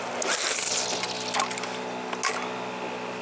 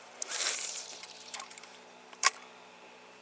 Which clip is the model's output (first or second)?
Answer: second